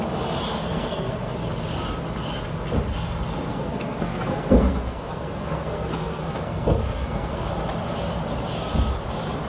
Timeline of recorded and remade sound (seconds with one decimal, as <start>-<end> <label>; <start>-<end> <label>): 0.0-0.6 recorded; 0.6-1.3 remade; 1.3-3.5 recorded; 3.5-7.5 remade; 7.5-9.5 recorded